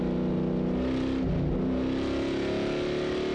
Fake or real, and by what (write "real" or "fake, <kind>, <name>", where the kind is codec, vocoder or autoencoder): real